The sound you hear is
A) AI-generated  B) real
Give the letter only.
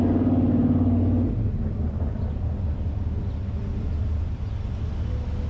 B